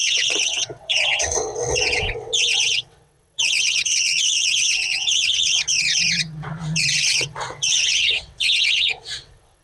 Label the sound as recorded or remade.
remade